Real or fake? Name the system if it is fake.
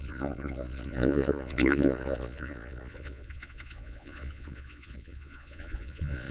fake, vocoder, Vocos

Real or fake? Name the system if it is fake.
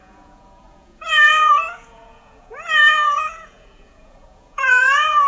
fake, vocoder, Vocos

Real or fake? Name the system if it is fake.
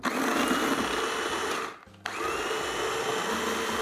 real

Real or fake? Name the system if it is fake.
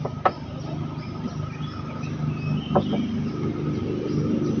real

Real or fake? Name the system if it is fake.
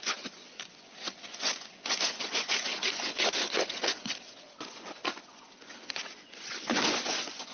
fake, vocoder, Vocos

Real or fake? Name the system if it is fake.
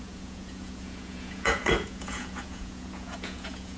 fake, vocoder, Vocos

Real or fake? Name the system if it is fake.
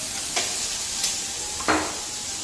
real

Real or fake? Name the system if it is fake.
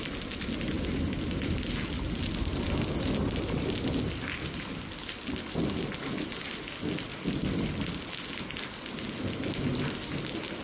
real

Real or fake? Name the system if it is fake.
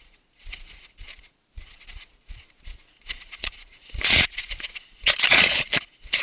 fake, vocoder, Vocos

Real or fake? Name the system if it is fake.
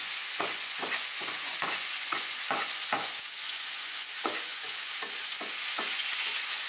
fake, vocoder, Vocos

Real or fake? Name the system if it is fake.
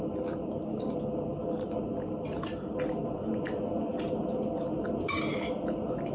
real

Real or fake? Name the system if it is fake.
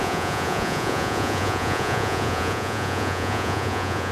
fake, vocoder, Vocos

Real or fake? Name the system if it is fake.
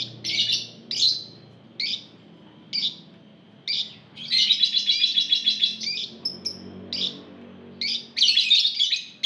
real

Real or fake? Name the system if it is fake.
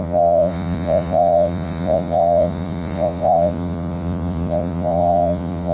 fake, vocoder, Vocos